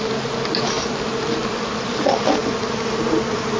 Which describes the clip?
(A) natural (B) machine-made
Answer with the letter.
A